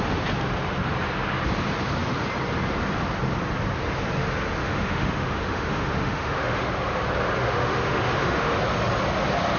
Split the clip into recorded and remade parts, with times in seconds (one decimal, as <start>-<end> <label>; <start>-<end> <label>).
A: 0.0-4.6 recorded; 4.6-6.7 remade; 6.7-7.4 recorded; 7.4-8.6 remade; 8.6-9.6 recorded